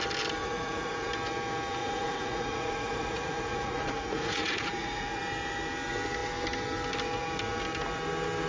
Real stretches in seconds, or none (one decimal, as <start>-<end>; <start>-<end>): 0.0-0.4; 1.1-1.8; 5.2-8.5